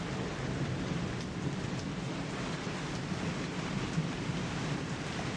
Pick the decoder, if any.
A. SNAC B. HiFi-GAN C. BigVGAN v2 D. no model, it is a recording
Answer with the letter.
C